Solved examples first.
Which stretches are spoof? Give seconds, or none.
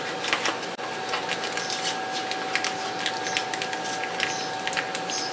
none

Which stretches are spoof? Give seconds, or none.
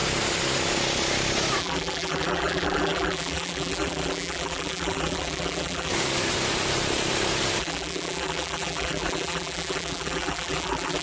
1.6-5.9 (vocoder, BigVGAN v2); 7.6-11.0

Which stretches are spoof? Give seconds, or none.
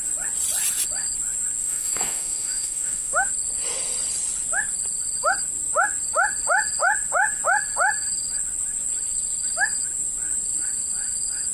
1.6-3.3 (autoencoder, DAC-VAE)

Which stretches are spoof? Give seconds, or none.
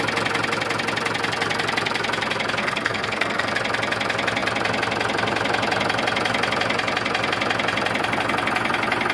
2.6-3.5 (codec, SNAC)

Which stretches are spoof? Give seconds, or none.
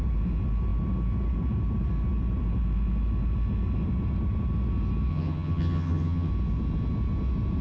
5.1-6.3 (vocoder, HiFi-GAN)